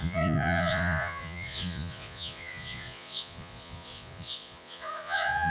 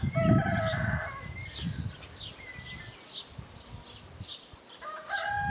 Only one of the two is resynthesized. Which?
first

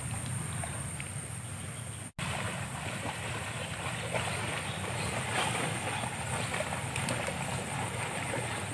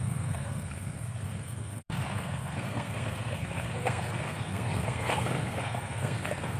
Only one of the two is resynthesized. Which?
second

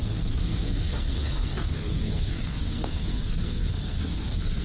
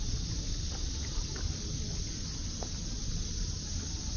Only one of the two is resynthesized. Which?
first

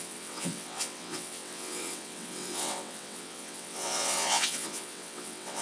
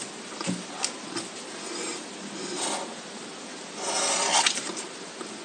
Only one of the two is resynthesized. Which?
first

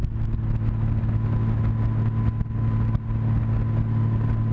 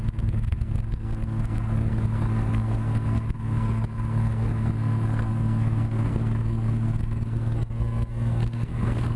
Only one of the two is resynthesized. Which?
second